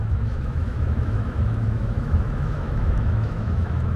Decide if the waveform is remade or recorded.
remade